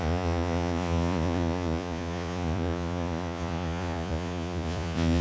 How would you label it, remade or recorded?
remade